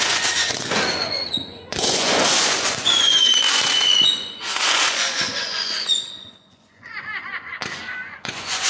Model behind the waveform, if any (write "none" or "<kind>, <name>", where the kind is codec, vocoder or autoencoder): vocoder, Vocos